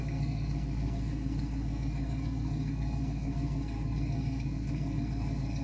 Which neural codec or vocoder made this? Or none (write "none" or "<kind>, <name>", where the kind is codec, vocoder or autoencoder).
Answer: codec, SNAC